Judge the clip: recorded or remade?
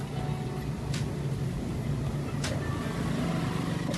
recorded